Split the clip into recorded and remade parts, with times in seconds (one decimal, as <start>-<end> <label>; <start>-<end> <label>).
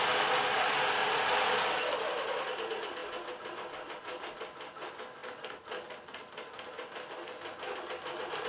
0.0-1.0 recorded; 1.0-1.9 remade; 1.9-8.5 recorded